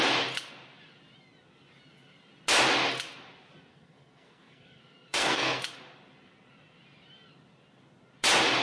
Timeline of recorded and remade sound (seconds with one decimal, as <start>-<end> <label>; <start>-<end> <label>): 0.0-3.7 recorded; 3.7-5.6 remade; 5.6-8.6 recorded